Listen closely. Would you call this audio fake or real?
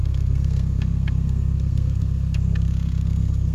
fake